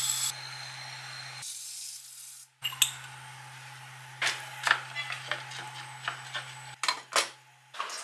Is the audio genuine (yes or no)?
yes